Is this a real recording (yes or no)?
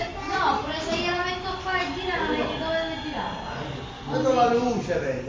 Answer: yes